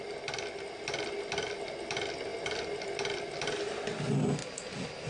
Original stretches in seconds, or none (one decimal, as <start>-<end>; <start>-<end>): 0.0-5.1